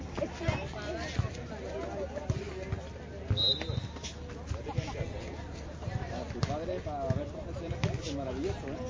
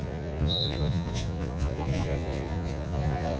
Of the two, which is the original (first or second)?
first